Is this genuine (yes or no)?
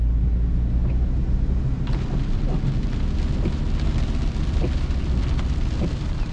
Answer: yes